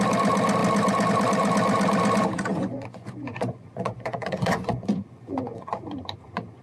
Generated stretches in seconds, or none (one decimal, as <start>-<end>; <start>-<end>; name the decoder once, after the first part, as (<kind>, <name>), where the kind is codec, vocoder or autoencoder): 2.5-6.6 (vocoder, Vocos)